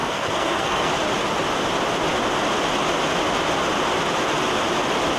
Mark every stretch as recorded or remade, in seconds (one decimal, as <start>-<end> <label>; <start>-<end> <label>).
0.0-0.9 remade; 0.9-5.2 recorded